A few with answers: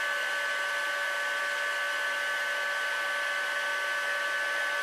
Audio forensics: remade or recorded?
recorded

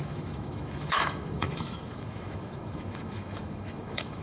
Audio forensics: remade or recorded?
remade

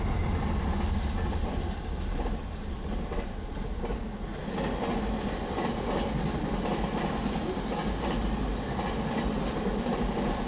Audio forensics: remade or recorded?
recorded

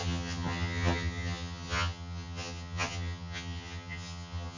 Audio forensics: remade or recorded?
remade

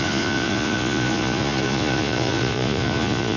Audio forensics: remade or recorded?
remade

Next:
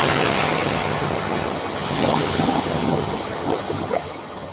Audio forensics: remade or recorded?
remade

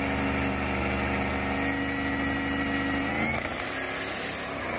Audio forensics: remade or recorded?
recorded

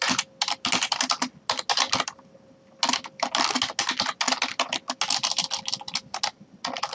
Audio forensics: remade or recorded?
recorded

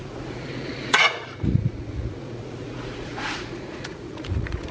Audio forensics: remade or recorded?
remade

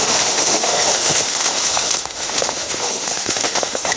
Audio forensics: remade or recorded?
remade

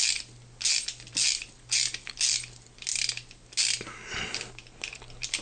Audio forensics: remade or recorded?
recorded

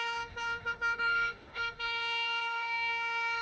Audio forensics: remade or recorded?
remade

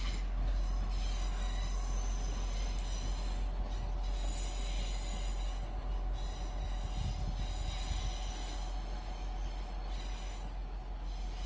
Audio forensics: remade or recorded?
recorded